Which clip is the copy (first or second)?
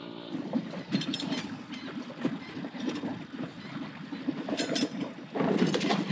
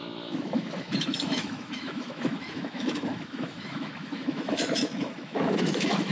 second